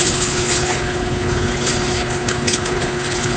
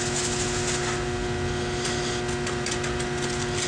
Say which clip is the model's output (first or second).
first